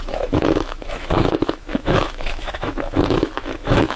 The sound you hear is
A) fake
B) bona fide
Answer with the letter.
A